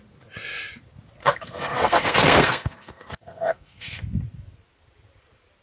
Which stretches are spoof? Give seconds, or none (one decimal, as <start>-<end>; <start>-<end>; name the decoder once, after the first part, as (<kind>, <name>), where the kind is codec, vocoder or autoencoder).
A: 1.2-4.0 (codec, SNAC)